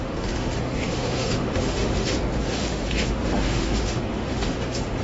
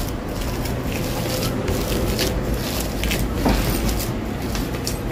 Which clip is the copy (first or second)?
first